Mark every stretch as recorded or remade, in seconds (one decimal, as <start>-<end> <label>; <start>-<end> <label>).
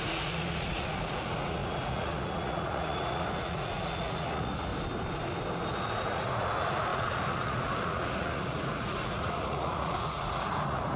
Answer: 0.0-4.7 remade; 4.7-5.7 recorded; 5.7-11.0 remade